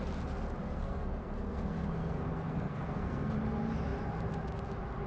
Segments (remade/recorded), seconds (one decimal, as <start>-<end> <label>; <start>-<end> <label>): 0.0-0.6 recorded; 0.6-3.3 remade; 3.3-5.1 recorded